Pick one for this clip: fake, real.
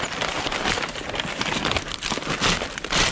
real